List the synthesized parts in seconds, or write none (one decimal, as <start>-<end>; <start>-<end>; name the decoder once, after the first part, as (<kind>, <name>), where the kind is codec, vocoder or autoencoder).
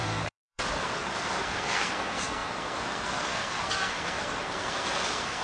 0.0-5.4 (codec, SNAC)